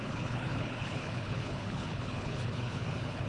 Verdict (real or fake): fake